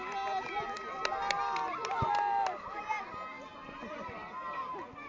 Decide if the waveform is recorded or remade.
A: recorded